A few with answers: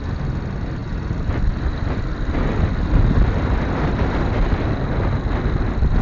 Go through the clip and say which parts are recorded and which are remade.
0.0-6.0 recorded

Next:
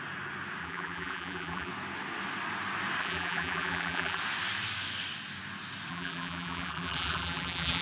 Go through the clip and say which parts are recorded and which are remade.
0.0-0.6 recorded; 0.6-1.7 remade; 1.7-3.0 recorded; 3.0-4.2 remade; 4.2-5.9 recorded; 5.9-7.8 remade

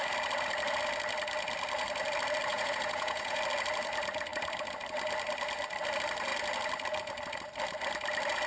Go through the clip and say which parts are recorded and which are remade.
0.0-2.5 recorded; 2.5-3.4 remade; 3.4-8.5 recorded

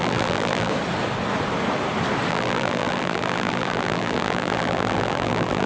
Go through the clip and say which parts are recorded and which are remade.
0.0-0.7 remade; 0.7-2.3 recorded; 2.3-5.7 remade

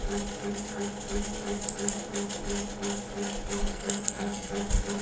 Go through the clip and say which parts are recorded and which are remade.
0.0-3.6 recorded; 3.6-4.5 remade; 4.5-5.0 recorded

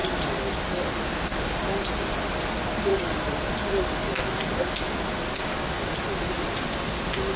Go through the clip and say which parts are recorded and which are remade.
0.0-7.4 recorded